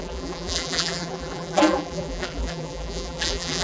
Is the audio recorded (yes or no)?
no